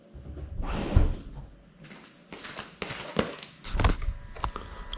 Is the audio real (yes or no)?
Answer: yes